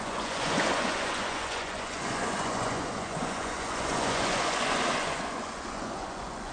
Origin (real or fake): fake